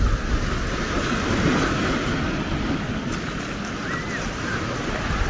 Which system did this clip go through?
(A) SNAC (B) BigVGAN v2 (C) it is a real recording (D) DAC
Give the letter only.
C